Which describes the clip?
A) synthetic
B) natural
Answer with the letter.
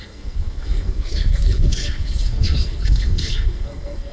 A